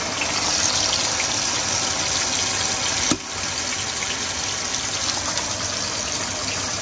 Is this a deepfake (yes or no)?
no